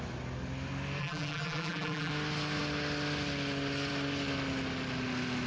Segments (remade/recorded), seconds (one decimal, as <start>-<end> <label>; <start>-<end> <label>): 0.0-1.0 recorded; 1.0-2.1 remade; 2.1-5.5 recorded